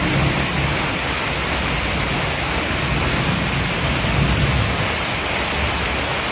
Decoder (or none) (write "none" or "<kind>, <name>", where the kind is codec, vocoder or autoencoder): none